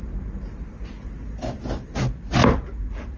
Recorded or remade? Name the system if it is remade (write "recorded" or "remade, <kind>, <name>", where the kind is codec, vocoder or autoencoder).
recorded